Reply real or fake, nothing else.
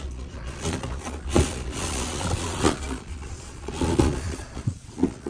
fake